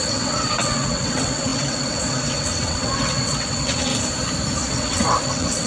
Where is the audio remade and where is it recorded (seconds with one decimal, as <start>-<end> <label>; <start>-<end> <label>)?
0.0-3.9 remade; 3.9-4.7 recorded; 4.7-5.7 remade